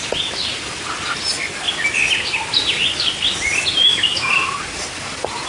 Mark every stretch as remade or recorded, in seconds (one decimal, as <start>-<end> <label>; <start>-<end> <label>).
0.0-3.8 recorded; 3.8-4.3 remade; 4.3-5.5 recorded

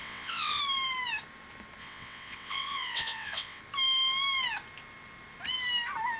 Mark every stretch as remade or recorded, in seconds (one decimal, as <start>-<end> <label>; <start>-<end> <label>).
0.0-0.6 remade; 0.6-1.8 recorded; 1.8-3.6 remade; 3.6-6.2 recorded